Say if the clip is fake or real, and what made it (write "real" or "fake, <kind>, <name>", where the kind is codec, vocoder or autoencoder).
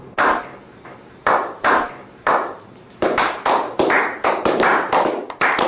fake, vocoder, BigVGAN v2